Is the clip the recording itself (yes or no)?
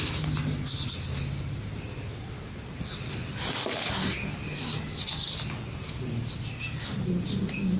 yes